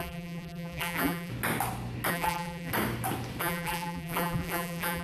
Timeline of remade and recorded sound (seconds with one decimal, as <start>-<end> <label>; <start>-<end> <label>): 0.0-1.3 remade; 1.3-2.1 recorded; 2.1-2.7 remade; 2.7-3.4 recorded; 3.4-5.0 remade